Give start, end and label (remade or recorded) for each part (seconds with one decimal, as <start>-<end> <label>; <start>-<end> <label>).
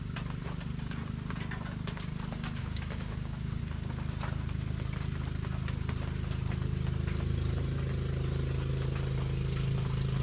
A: 0.0-2.6 recorded; 2.6-3.6 remade; 3.6-10.2 recorded